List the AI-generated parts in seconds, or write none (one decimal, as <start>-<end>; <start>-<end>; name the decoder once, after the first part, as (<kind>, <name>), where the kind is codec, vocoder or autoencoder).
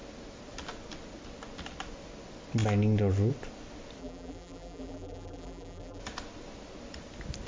4.0-6.0 (vocoder, BigVGAN v2)